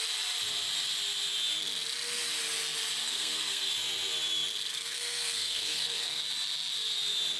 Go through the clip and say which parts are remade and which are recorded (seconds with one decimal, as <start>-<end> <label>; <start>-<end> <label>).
0.0-3.0 recorded; 3.0-3.7 remade; 3.7-4.7 recorded; 4.7-6.2 remade; 6.2-7.4 recorded